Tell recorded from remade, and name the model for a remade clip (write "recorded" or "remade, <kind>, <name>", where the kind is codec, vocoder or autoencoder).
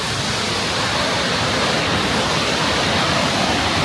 recorded